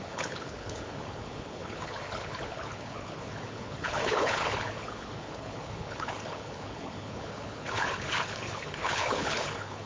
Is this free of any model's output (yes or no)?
no